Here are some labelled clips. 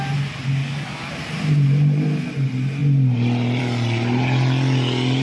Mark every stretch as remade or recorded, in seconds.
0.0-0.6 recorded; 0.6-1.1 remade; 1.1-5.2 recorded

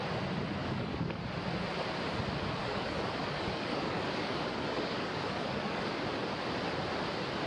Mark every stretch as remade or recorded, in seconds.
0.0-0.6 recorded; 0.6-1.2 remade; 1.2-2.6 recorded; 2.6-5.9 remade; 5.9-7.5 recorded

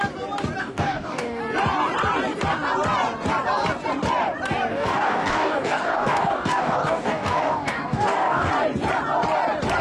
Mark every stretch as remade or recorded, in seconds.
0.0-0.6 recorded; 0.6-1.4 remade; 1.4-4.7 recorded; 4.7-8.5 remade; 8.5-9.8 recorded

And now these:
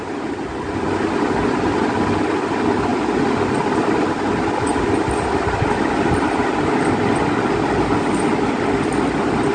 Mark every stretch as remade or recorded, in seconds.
0.0-9.5 recorded

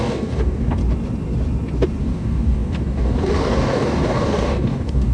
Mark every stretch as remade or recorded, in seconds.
0.0-0.8 remade; 0.8-2.0 recorded; 2.0-5.1 remade